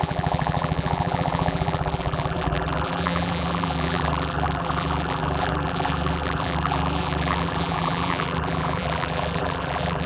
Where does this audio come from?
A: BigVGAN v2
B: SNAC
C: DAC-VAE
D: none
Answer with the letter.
A